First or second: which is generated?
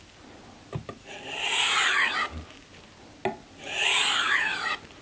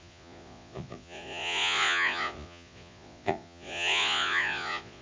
second